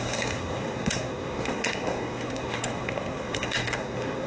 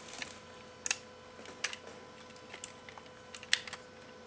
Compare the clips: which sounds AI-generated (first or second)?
first